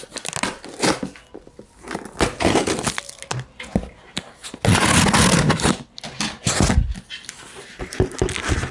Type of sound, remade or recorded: recorded